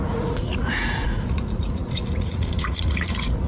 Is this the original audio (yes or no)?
no